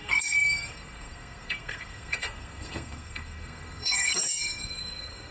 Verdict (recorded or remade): remade